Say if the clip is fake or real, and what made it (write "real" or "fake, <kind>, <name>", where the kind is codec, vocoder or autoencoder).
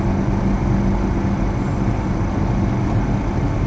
real